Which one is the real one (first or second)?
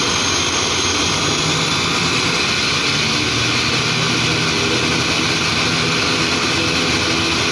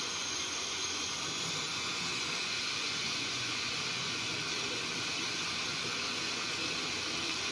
first